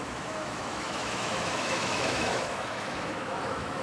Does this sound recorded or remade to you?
remade